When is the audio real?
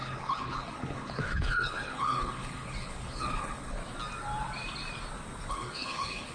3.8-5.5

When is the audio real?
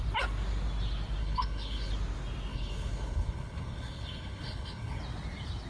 0.0-1.2; 1.9-2.5; 5.0-5.7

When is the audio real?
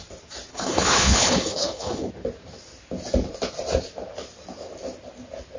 0.0-0.5; 2.1-5.6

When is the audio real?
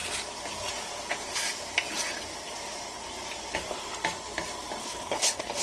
0.0-4.8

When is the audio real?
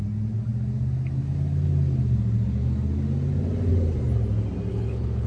0.0-4.7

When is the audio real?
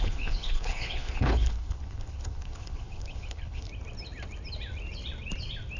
3.7-5.8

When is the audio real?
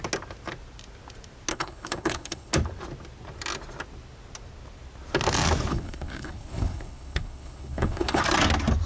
0.0-1.5; 2.5-5.7; 8.2-8.9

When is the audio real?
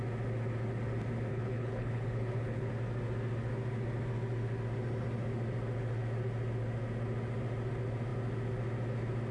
0.0-1.3; 2.7-9.3